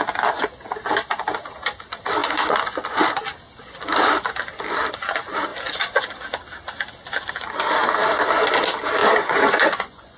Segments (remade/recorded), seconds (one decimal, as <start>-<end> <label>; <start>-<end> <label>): 0.0-2.2 recorded; 2.2-3.0 remade; 3.0-9.0 recorded; 9.0-10.2 remade